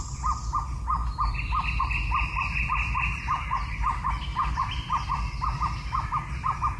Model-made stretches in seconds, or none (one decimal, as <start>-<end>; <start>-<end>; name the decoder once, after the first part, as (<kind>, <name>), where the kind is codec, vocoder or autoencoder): none